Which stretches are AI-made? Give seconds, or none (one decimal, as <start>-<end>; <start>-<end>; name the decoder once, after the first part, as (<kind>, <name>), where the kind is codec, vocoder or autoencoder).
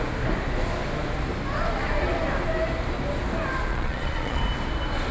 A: 3.7-4.4 (vocoder, Vocos)